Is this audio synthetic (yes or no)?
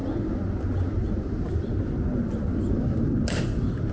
no